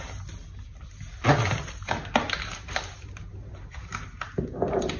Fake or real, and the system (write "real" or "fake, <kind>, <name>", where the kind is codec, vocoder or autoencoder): real